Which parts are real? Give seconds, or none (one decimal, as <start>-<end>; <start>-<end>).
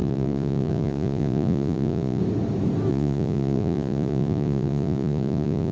2.2-2.9